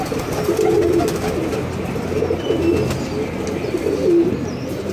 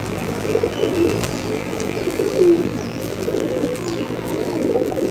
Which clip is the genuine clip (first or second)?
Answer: first